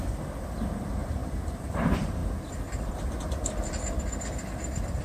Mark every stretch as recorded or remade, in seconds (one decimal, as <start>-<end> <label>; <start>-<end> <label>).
0.0-2.2 remade; 2.2-2.9 recorded; 2.9-5.0 remade